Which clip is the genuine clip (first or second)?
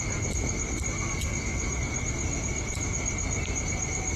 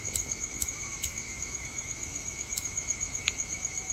first